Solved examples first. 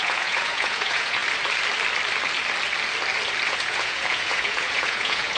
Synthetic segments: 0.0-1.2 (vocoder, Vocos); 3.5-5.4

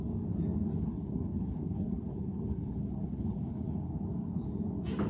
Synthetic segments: 0.8-3.9 (codec, HILCodec)